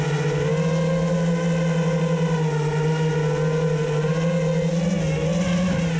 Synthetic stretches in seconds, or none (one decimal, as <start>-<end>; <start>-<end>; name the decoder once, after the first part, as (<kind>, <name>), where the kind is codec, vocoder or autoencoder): none